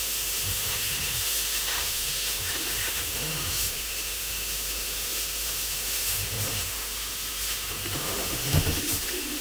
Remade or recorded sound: remade